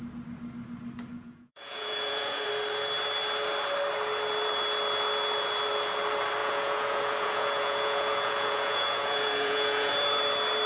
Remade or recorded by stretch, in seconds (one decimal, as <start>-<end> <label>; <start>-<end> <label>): 0.0-1.1 recorded; 1.1-2.5 remade; 2.5-6.4 recorded; 6.4-9.9 remade; 9.9-10.7 recorded